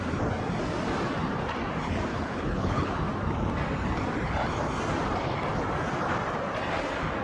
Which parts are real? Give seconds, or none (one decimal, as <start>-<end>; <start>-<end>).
0.0-2.1; 2.9-7.2